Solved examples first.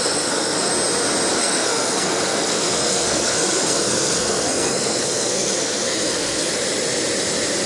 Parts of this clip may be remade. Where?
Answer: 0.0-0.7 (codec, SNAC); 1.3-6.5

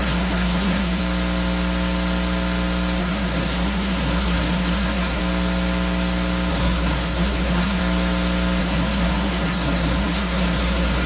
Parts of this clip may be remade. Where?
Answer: 0.0-1.0 (codec, SNAC); 3.0-5.2; 6.5-7.8; 8.6-11.1

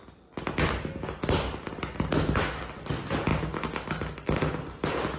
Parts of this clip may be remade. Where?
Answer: none